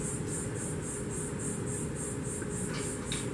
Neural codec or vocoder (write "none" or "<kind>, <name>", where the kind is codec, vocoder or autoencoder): none